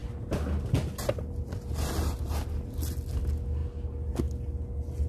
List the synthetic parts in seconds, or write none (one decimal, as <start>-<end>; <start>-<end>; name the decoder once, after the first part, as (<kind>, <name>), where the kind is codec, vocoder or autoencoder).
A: none